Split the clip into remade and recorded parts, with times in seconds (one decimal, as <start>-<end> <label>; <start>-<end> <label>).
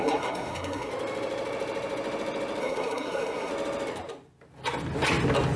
0.0-0.9 remade; 0.9-2.6 recorded; 2.6-3.5 remade; 3.5-5.6 recorded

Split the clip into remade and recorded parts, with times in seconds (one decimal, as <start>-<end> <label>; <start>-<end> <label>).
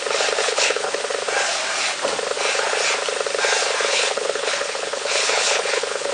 0.0-0.4 recorded; 0.4-1.0 remade; 1.0-3.9 recorded; 3.9-6.1 remade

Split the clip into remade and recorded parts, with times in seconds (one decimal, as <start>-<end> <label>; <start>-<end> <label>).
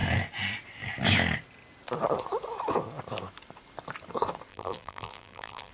0.0-4.5 recorded; 4.5-5.7 remade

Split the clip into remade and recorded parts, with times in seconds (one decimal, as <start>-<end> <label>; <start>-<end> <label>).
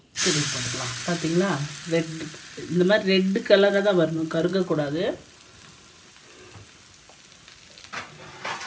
0.0-8.7 recorded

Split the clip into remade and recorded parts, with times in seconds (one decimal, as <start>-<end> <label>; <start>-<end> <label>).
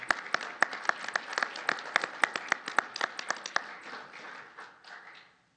0.0-5.6 recorded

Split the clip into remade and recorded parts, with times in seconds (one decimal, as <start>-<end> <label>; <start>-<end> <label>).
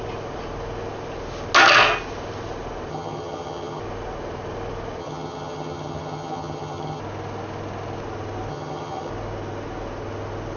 0.0-2.9 recorded; 2.9-3.8 remade; 3.8-5.0 recorded; 5.0-7.0 remade; 7.0-8.5 recorded; 8.5-9.1 remade; 9.1-10.6 recorded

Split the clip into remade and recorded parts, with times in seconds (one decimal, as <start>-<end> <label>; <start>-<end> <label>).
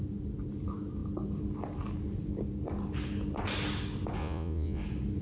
0.0-4.2 recorded; 4.2-4.8 remade; 4.8-5.2 recorded